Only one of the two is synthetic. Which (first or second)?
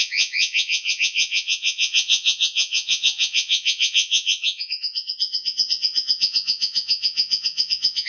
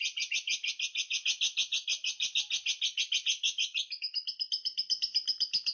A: first